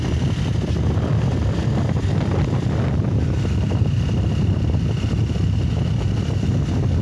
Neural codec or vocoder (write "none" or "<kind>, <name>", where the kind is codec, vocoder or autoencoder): none